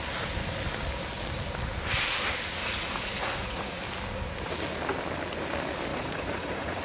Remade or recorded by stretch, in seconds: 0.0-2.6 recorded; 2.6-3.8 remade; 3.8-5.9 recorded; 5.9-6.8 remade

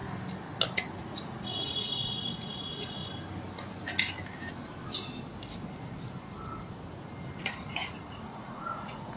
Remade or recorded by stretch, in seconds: 0.0-1.0 recorded; 1.0-3.0 remade; 3.0-7.4 recorded; 7.4-9.2 remade

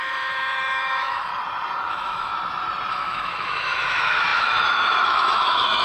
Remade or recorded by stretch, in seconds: 0.0-1.3 remade; 1.3-1.9 recorded; 1.9-2.3 remade; 2.3-2.9 recorded; 2.9-5.8 remade

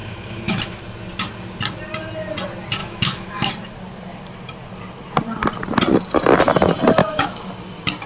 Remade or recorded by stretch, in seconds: 0.0-0.8 remade; 0.8-2.8 recorded; 2.8-3.5 remade; 3.5-7.0 recorded; 7.0-7.5 remade; 7.5-8.1 recorded